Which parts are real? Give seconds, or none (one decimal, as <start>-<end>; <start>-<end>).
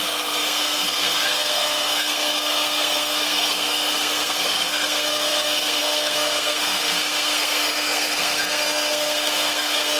none